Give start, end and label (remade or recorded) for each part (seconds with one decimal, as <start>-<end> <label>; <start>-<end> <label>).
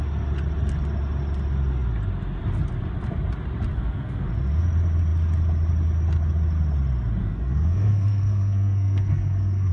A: 0.0-3.7 recorded; 3.7-4.3 remade; 4.3-7.2 recorded; 7.2-9.7 remade